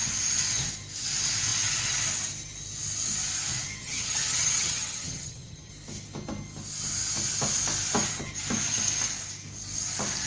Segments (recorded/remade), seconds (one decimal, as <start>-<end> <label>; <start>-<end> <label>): 0.0-3.8 recorded; 3.8-5.7 remade; 5.7-10.3 recorded